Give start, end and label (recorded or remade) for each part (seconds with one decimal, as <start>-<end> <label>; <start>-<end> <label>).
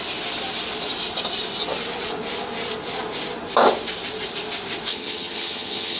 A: 0.0-4.9 recorded; 4.9-6.0 remade